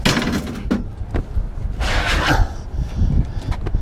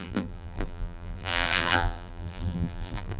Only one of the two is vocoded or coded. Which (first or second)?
second